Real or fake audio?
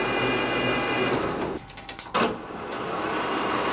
real